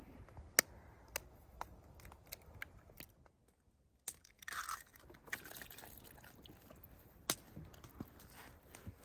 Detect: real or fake real